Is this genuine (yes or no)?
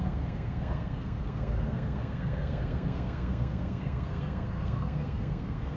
no